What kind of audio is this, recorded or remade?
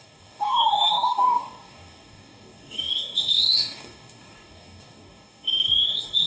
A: remade